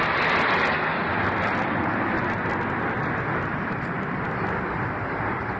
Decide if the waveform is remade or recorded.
recorded